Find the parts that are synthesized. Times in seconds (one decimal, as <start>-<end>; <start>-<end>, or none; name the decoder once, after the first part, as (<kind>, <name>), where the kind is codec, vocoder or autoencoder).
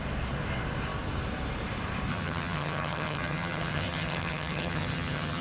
2.1-5.4 (vocoder, HiFi-GAN)